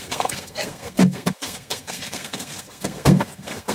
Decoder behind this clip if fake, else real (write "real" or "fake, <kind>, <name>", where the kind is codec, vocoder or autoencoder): fake, codec, SNAC